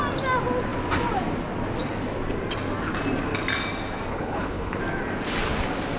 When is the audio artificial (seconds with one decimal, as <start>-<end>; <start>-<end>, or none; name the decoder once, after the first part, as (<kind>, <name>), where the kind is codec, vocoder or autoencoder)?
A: 4.1-4.8 (codec, HILCodec)